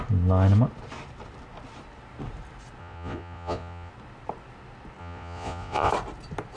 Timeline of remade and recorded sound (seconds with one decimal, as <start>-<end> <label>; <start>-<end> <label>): 0.0-2.8 recorded; 2.8-3.9 remade; 3.9-5.0 recorded; 5.0-5.9 remade; 5.9-6.6 recorded